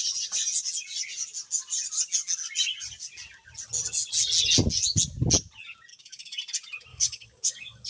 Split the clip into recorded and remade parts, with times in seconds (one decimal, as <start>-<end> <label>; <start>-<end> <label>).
0.0-5.9 recorded; 5.9-6.4 remade; 6.4-6.9 recorded; 6.9-7.9 remade